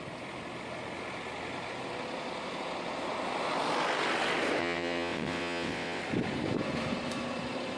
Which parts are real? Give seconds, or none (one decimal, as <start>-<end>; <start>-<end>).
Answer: 0.0-4.6; 6.0-7.8